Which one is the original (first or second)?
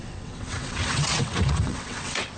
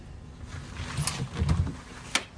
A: second